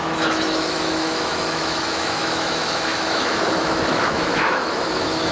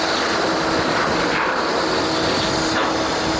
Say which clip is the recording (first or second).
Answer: second